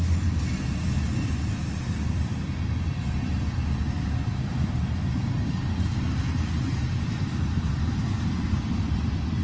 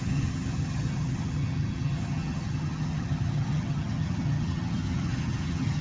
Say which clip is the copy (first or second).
second